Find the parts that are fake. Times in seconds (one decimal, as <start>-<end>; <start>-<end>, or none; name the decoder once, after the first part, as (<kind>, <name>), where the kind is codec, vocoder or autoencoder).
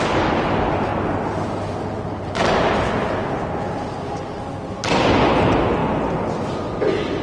none